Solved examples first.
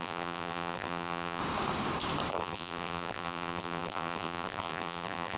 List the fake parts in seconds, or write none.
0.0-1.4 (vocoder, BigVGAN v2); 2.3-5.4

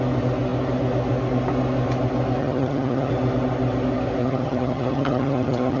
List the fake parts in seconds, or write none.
2.4-3.1 (vocoder, HiFi-GAN); 4.2-5.8